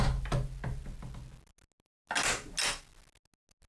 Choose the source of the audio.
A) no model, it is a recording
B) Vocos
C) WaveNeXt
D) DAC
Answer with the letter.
A